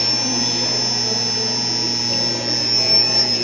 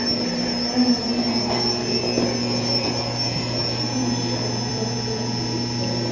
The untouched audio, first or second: first